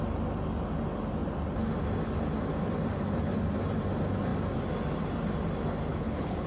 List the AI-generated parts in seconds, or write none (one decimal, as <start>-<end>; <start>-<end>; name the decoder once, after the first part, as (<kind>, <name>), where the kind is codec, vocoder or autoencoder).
5.9-6.5 (codec, HILCodec)